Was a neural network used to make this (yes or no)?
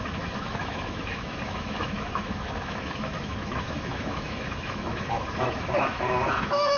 yes